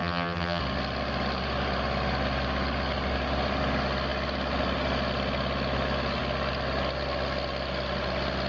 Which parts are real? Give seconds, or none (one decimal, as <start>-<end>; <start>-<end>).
0.6-8.5